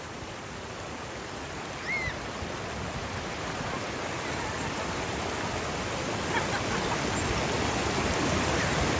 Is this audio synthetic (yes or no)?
no